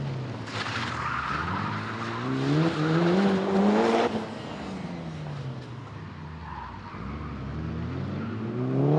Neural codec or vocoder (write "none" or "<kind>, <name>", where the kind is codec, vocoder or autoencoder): none